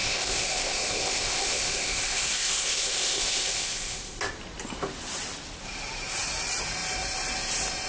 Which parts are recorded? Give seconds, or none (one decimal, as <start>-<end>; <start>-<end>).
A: 4.2-7.9